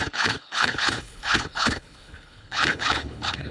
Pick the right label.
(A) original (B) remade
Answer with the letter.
B